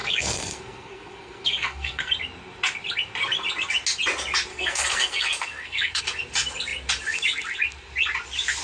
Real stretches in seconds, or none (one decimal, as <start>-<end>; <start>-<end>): 2.1-4.5; 6.0-8.6